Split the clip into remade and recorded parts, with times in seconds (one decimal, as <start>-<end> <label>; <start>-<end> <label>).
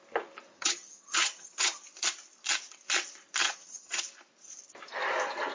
0.0-0.5 recorded; 0.5-1.8 remade; 1.8-3.4 recorded; 3.4-4.0 remade; 4.0-5.5 recorded